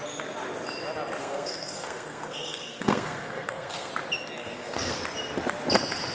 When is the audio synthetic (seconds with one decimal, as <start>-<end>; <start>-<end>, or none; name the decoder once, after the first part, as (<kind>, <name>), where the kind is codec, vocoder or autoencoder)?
1.2-3.9 (codec, SNAC); 4.4-5.0